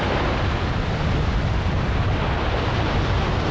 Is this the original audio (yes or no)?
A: yes